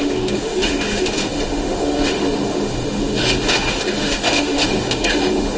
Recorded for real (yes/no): no